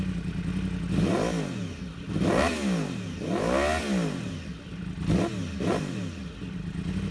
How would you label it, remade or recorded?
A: recorded